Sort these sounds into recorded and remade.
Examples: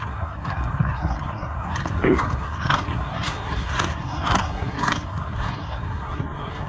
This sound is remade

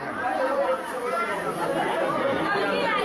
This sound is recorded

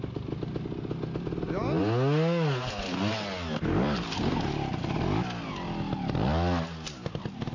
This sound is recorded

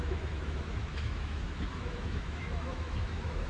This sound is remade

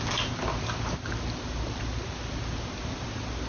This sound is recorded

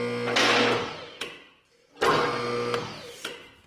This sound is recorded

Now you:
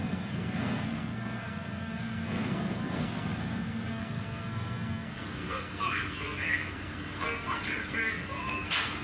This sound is remade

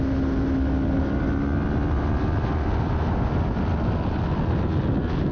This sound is recorded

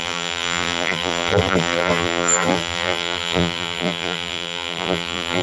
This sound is remade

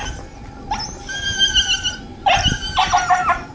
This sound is recorded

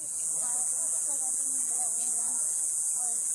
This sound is recorded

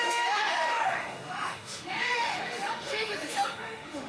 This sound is remade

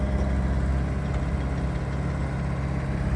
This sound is recorded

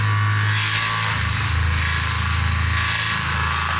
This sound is recorded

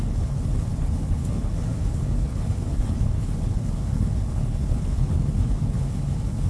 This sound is remade